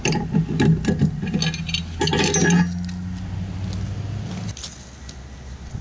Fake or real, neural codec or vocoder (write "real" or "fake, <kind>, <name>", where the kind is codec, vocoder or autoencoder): real